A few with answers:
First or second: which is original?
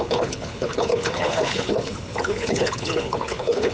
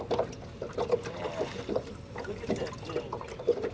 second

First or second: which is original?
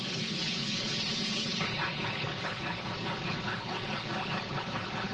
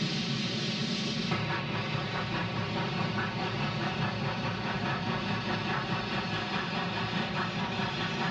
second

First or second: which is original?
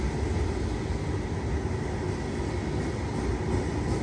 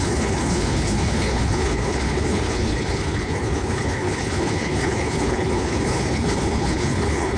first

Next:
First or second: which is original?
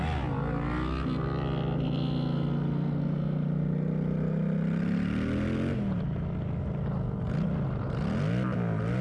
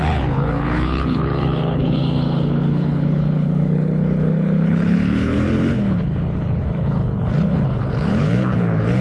first